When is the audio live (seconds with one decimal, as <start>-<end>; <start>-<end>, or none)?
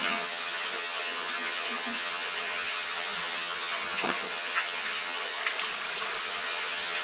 5.4-6.2